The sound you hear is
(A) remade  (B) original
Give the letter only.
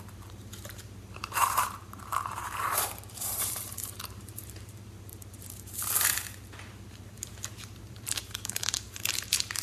A